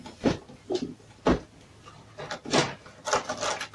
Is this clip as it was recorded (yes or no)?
yes